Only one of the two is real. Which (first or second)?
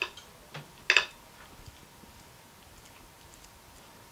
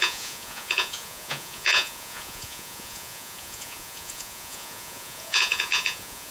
first